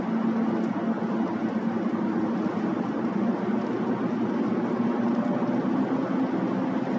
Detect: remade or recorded recorded